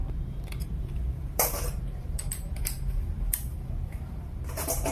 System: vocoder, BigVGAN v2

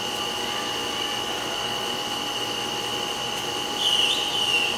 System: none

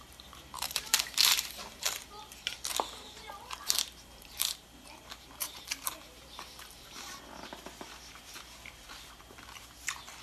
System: vocoder, BigVGAN v2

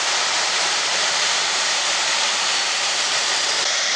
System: vocoder, BigVGAN v2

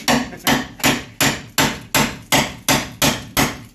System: none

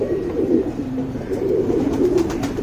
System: vocoder, BigVGAN v2